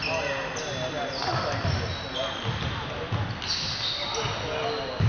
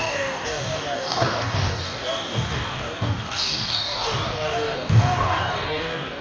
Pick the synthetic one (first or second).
second